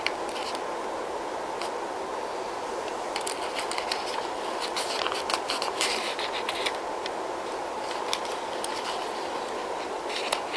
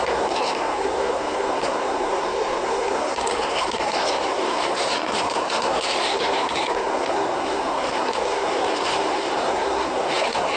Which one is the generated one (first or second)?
second